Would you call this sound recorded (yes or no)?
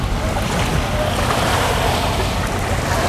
yes